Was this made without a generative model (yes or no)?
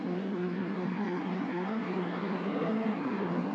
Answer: no